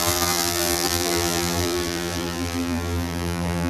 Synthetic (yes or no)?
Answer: yes